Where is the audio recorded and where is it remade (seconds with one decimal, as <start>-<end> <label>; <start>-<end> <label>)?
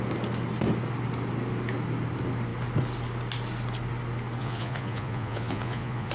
0.0-4.4 recorded; 4.4-6.1 remade